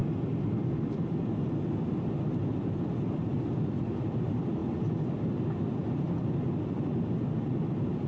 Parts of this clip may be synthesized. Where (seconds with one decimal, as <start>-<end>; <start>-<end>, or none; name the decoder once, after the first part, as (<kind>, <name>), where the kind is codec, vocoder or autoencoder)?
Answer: none